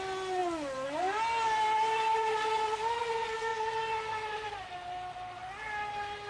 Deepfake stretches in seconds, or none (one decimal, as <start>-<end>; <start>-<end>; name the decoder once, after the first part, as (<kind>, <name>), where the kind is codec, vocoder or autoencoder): none